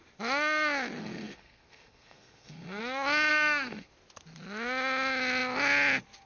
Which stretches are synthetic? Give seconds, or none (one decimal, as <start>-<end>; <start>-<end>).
1.0-2.8; 3.3-3.9